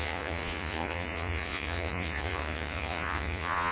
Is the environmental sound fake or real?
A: fake